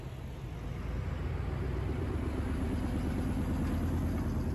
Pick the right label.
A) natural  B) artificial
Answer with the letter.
A